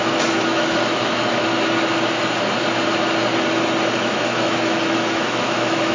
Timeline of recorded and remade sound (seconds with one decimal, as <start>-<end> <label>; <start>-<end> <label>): 0.0-1.5 remade; 1.5-4.0 recorded; 4.0-5.9 remade